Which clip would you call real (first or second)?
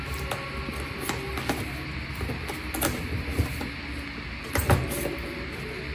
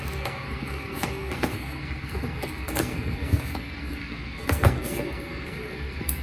first